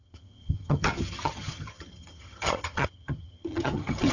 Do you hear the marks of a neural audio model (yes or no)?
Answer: yes